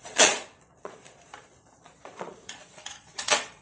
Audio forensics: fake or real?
fake